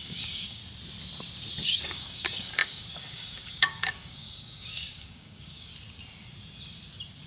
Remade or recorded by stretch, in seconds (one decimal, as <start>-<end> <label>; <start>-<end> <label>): 0.0-0.6 remade; 0.6-1.8 recorded; 1.8-5.7 remade; 5.7-7.3 recorded